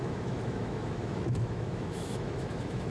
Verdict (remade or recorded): remade